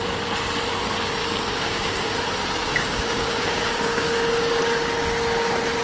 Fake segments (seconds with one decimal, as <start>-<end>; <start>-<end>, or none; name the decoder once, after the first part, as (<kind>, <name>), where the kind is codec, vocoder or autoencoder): 1.2-2.1 (codec, DAC); 2.7-4.6